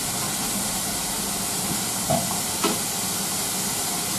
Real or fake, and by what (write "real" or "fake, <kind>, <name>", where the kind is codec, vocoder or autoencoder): real